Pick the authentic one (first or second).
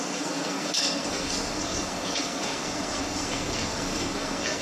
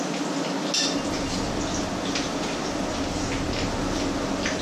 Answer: second